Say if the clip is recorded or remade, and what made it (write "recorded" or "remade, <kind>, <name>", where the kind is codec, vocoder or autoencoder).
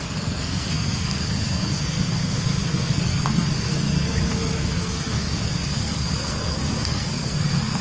remade, codec, SNAC